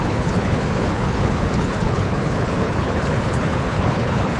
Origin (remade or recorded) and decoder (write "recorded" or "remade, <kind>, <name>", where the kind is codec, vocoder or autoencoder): remade, codec, HILCodec